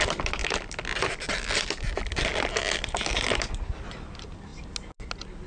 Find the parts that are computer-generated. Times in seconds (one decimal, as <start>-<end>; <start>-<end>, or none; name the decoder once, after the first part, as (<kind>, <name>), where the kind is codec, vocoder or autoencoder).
none